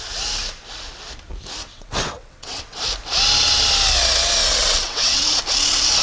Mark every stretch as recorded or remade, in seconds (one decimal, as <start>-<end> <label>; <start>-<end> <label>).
0.0-1.7 recorded; 1.7-2.8 remade; 2.8-4.5 recorded; 4.5-5.4 remade; 5.4-6.0 recorded